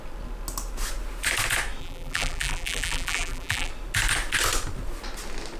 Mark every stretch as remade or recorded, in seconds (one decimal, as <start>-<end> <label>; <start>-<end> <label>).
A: 0.0-1.8 recorded; 1.8-3.7 remade; 3.7-5.6 recorded